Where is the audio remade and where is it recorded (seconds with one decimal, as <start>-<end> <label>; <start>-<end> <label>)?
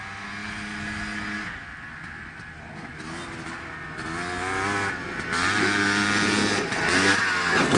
0.0-7.8 recorded